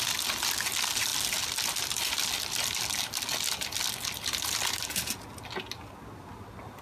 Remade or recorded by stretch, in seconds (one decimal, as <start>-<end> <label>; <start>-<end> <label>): 0.0-6.8 recorded